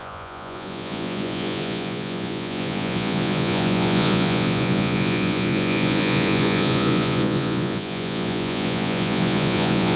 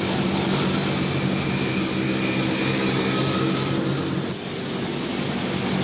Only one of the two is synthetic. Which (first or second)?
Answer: first